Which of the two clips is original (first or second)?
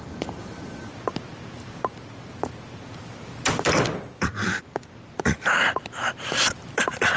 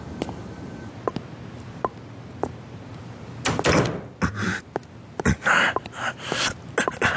second